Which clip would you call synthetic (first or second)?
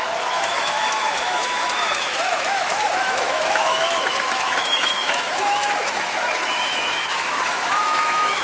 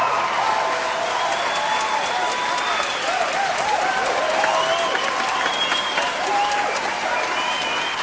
first